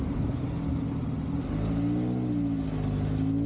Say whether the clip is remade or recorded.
recorded